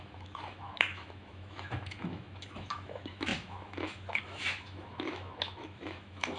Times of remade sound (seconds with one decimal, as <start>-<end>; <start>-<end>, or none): 0.0-6.4